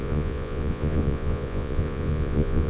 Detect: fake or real fake